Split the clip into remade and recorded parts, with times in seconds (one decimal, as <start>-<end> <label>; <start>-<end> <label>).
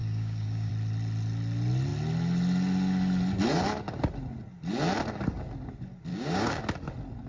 0.0-0.7 remade; 0.7-6.1 recorded; 6.1-6.6 remade; 6.6-7.3 recorded